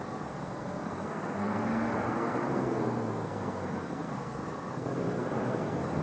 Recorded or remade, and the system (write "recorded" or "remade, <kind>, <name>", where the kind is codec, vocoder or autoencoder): remade, codec, SNAC